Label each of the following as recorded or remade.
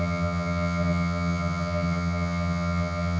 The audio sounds remade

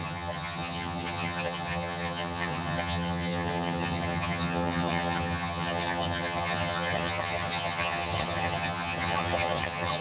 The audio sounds remade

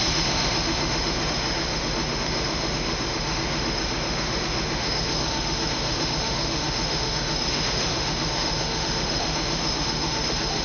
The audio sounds remade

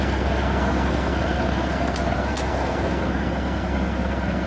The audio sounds remade